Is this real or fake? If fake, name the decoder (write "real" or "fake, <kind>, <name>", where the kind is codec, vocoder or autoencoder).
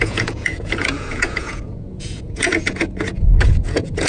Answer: fake, vocoder, Vocos